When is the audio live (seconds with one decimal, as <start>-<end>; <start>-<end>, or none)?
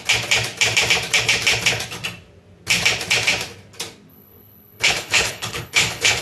0.0-4.1